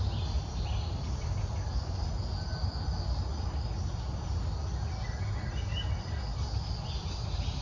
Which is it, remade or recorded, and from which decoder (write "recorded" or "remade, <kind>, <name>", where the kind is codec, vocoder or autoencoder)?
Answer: recorded